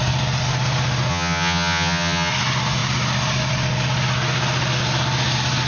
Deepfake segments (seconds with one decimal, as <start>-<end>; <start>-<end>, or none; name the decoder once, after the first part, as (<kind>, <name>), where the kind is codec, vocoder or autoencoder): 1.1-2.3 (vocoder, HiFi-GAN)